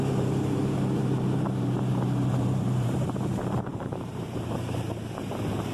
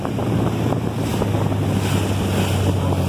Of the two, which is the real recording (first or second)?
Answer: second